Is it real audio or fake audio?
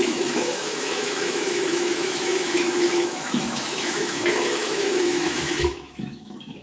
fake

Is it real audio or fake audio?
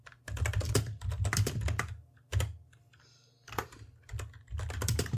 real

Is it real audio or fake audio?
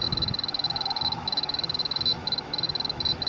fake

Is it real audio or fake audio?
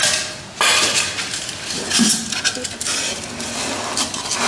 real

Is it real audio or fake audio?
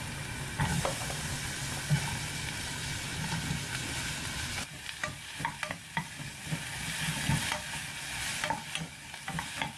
real